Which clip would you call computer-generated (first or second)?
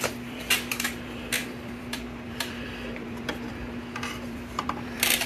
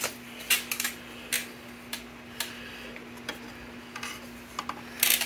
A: first